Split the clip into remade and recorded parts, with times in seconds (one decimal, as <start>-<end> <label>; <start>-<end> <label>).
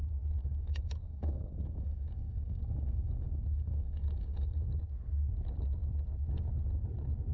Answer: 0.0-0.4 recorded; 0.4-4.8 remade; 4.8-7.3 recorded